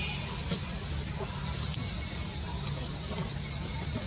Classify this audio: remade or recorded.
recorded